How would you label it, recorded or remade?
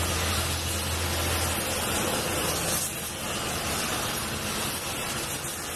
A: recorded